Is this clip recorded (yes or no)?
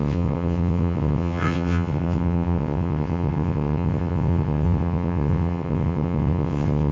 no